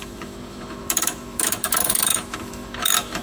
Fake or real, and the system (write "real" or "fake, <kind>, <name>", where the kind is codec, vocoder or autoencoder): fake, autoencoder, DAC-VAE